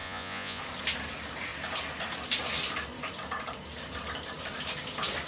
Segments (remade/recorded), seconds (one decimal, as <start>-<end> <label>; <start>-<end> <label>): 0.0-0.6 remade; 0.6-5.3 recorded